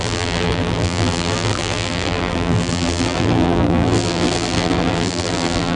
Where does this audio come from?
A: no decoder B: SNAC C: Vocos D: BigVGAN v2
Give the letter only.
D